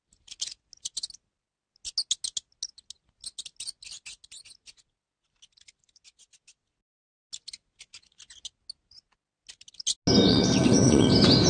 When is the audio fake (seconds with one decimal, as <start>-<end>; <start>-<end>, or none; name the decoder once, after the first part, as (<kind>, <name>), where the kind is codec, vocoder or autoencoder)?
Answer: 10.3-11.1 (vocoder, WaveNeXt)